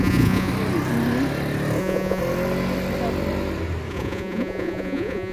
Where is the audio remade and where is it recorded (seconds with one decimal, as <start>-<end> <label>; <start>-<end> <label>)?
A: 0.0-0.5 remade; 0.5-1.8 recorded; 1.8-2.2 remade; 2.2-3.9 recorded; 3.9-5.3 remade